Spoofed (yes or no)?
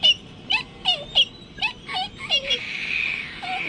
no